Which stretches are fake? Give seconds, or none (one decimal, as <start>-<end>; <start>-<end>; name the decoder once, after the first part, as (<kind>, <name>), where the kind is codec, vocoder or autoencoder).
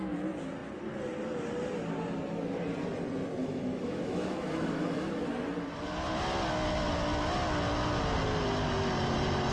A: 3.4-5.2 (autoencoder, DAC-VAE)